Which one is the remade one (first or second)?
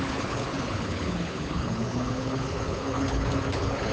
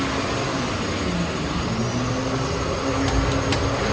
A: first